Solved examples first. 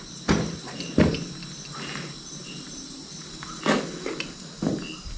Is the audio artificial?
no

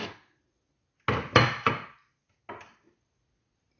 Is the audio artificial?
no